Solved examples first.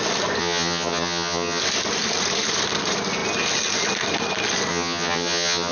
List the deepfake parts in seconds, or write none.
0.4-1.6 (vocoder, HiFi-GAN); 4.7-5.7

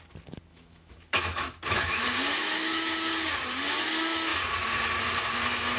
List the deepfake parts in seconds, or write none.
0.5-1.8 (autoencoder, DAC-VAE); 2.4-3.1

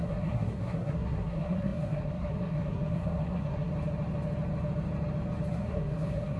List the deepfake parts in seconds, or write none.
0.0-3.7 (codec, SNAC); 5.5-6.4

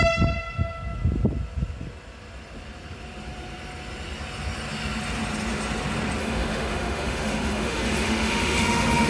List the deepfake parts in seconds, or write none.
6.2-9.1 (autoencoder, DAC-VAE)

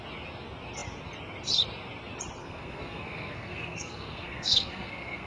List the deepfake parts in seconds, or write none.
2.4-5.3 (codec, SNAC)

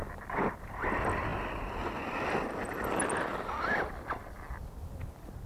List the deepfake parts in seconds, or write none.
none

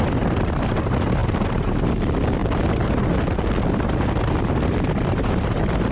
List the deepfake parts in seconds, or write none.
1.2-1.8 (vocoder, BigVGAN v2); 2.4-3.0

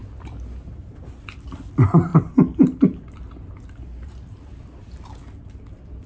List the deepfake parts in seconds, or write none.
2.1-4.1 (vocoder, BigVGAN v2)